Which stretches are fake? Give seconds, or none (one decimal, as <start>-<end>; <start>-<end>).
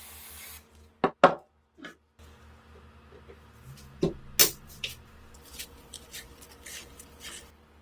4.4-7.8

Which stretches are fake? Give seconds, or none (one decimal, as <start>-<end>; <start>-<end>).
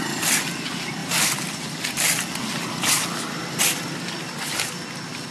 1.0-3.6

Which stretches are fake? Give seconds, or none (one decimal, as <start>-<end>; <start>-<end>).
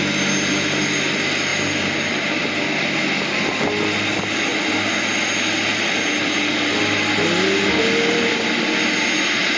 none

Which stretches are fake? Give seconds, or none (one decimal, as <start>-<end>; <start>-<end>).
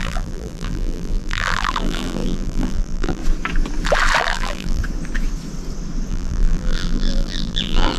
0.0-3.2; 4.2-4.8; 6.1-8.0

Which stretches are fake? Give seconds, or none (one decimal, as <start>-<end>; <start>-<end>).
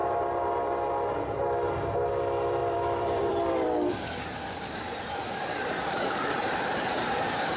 2.1-7.6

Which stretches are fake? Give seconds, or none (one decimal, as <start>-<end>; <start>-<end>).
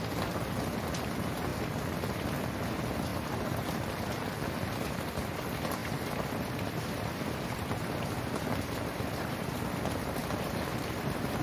3.1-4.2; 5.8-9.5; 10.2-11.4